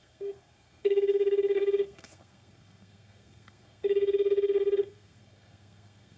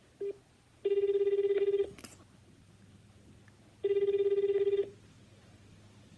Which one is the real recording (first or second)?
second